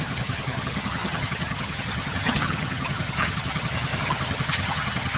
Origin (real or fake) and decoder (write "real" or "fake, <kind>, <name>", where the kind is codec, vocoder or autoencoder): fake, vocoder, HiFi-GAN